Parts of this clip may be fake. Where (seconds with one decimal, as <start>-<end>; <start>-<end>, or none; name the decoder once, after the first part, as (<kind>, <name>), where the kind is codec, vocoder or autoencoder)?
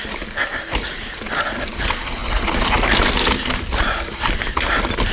none